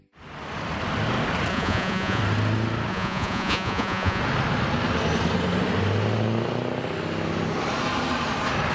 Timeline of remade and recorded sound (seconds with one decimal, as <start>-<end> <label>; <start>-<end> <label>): 0.0-1.5 recorded; 1.5-2.2 remade; 2.2-2.9 recorded; 2.9-4.2 remade; 4.2-8.7 recorded

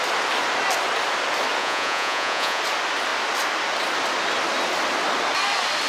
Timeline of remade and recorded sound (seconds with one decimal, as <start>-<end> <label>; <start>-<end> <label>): 0.0-1.6 recorded; 1.6-2.6 remade; 2.6-5.9 recorded

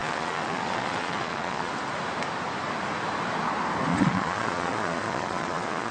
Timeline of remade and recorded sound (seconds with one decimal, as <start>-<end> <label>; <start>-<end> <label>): 0.0-1.7 remade; 1.7-3.9 recorded; 3.9-5.9 remade

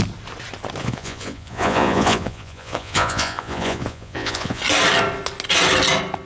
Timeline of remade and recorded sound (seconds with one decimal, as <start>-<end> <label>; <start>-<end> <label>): 0.0-0.8 recorded; 0.8-4.6 remade; 4.6-6.3 recorded

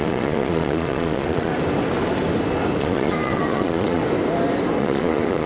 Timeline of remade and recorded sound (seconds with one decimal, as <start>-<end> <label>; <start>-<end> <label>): 0.0-1.5 remade; 1.5-2.8 recorded; 2.8-4.0 remade; 4.0-4.8 recorded; 4.8-5.5 remade